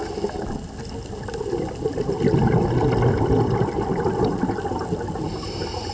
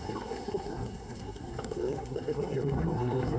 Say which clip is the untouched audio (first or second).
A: first